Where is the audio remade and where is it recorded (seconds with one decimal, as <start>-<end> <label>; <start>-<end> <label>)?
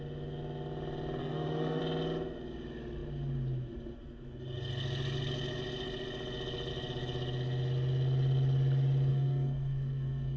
0.0-1.2 recorded; 1.2-1.8 remade; 1.8-9.1 recorded; 9.1-10.4 remade